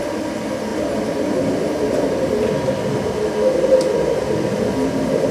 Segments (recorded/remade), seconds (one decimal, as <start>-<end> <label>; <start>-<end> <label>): 0.0-5.3 recorded